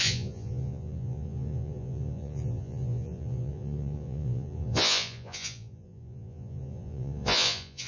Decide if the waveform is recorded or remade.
remade